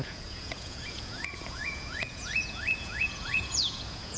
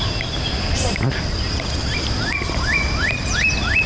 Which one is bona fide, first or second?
second